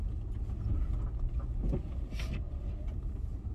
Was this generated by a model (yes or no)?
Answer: no